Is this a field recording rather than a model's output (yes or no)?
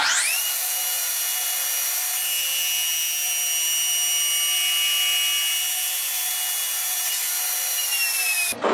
yes